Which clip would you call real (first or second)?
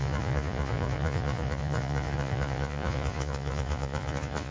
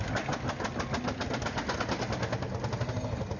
second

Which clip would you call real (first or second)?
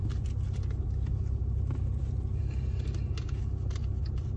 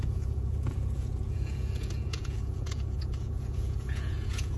first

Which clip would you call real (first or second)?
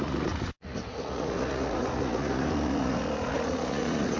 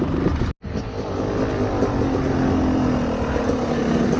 second